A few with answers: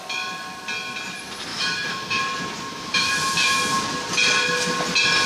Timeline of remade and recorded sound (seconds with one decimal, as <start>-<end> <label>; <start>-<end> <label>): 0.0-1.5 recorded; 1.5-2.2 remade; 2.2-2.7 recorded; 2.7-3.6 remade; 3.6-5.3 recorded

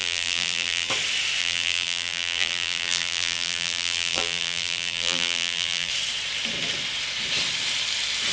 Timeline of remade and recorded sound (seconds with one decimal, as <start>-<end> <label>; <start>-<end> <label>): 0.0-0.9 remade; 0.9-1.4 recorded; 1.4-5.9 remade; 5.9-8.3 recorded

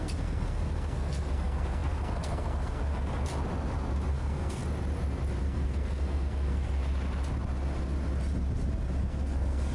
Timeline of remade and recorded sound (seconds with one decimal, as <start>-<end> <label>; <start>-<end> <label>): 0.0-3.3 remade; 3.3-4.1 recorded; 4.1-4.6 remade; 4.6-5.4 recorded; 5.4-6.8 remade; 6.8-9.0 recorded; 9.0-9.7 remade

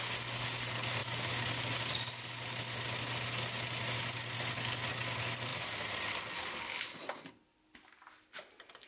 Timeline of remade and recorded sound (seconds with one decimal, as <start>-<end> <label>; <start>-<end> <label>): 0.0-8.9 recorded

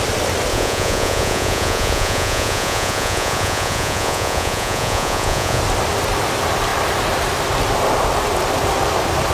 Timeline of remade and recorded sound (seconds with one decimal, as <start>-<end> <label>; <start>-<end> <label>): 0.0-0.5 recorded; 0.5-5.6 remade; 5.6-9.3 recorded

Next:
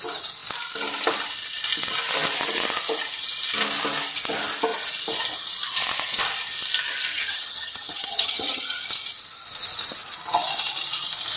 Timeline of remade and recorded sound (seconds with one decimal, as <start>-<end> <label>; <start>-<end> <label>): 0.0-7.1 recorded; 7.1-8.8 remade; 8.8-11.4 recorded

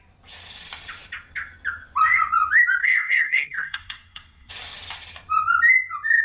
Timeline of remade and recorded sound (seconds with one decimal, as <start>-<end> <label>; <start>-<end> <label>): 0.0-2.8 recorded; 2.8-4.5 remade; 4.5-6.2 recorded

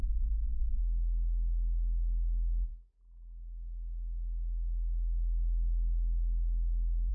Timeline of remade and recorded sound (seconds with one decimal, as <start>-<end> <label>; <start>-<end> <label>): 0.0-0.8 remade; 0.8-7.1 recorded